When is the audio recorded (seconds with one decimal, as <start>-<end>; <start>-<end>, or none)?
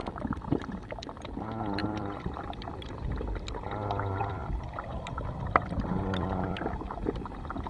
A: 0.6-1.8; 4.7-7.7